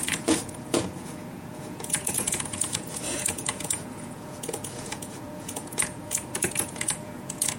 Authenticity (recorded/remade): remade